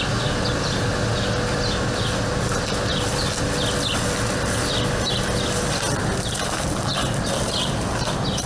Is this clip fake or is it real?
real